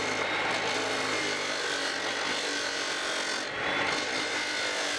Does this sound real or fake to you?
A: real